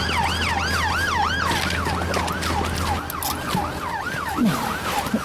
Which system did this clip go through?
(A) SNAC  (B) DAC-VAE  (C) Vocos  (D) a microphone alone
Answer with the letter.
D